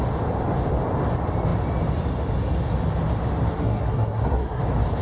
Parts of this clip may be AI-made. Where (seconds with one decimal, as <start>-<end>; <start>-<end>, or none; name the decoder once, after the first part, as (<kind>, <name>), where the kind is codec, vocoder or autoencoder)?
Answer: 3.5-4.6 (codec, SNAC)